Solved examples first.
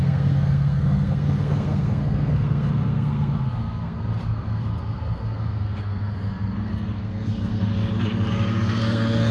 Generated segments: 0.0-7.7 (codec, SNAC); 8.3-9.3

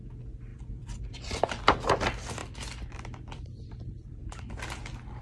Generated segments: 0.5-1.6 (vocoder, BigVGAN v2); 2.4-4.5